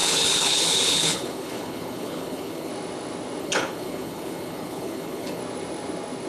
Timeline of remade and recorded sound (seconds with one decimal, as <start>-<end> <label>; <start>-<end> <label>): 0.0-2.7 remade; 2.7-3.4 recorded; 3.4-5.4 remade; 5.4-6.3 recorded